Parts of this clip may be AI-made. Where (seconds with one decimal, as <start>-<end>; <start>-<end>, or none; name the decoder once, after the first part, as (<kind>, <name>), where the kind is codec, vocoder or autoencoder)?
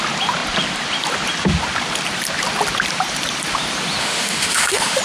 4.0-5.0 (autoencoder, DAC-VAE)